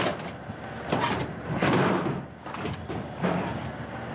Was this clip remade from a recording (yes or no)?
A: no